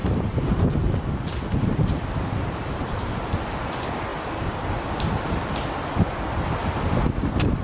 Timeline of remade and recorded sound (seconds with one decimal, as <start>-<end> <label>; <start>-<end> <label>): 0.0-3.6 remade; 3.6-7.6 recorded